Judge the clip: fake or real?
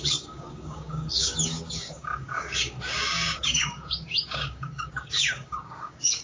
fake